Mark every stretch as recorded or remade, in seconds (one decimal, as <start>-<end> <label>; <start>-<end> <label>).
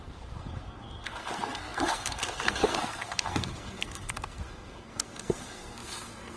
0.0-6.4 remade